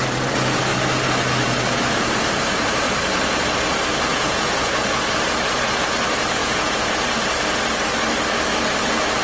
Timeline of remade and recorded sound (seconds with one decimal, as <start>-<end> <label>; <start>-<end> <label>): 0.0-4.1 recorded; 4.1-4.9 remade; 4.9-6.4 recorded; 6.4-6.9 remade; 6.9-9.2 recorded